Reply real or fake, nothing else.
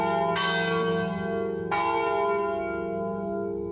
real